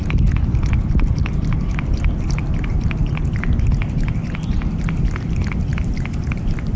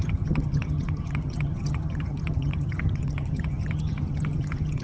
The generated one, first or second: second